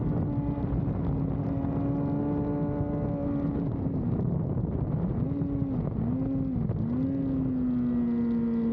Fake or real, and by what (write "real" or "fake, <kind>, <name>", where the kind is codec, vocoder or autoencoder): real